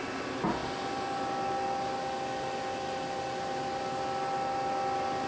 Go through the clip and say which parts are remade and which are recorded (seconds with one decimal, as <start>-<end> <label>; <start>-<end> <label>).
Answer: 0.0-5.3 recorded